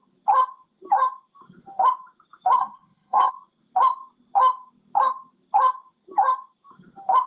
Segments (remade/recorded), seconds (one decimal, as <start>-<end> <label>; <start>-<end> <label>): 0.0-2.6 recorded; 2.6-3.3 remade; 3.3-7.3 recorded